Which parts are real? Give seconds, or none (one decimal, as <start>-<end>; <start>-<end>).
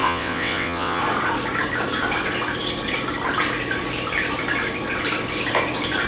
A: 1.0-6.1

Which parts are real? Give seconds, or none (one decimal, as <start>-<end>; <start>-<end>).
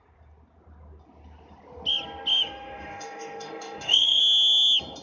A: 0.0-2.3; 4.2-5.0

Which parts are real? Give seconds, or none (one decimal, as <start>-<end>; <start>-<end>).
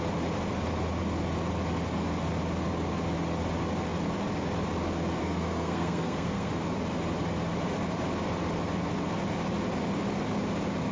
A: 0.0-5.2; 6.5-10.9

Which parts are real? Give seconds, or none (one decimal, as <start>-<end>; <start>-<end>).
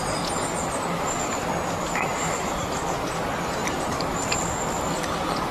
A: 0.0-3.6; 4.4-5.5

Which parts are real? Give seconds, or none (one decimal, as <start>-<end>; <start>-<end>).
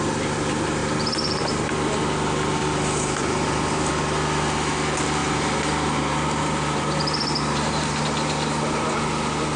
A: 0.0-0.8; 1.7-2.6; 3.9-5.2; 8.0-9.6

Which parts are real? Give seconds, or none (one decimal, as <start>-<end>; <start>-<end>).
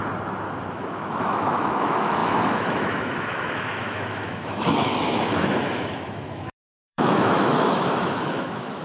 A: 0.0-0.7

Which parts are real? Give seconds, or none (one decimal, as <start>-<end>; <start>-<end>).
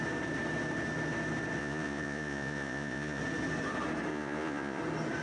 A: 0.0-1.6; 3.2-4.1; 4.8-5.2